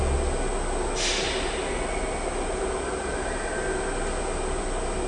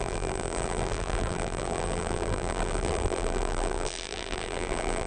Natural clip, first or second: first